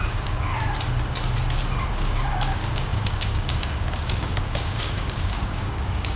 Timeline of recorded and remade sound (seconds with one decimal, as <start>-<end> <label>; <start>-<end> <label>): 0.0-0.5 remade; 0.5-1.9 recorded; 1.9-6.2 remade